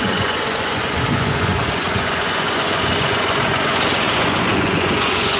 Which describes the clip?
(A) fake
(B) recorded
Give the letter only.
A